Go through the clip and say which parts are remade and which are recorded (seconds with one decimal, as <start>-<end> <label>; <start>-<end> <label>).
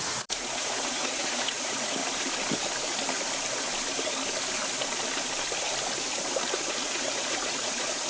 0.0-2.0 remade; 2.0-6.7 recorded; 6.7-8.1 remade